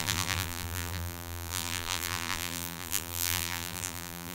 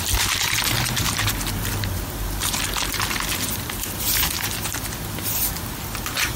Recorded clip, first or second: second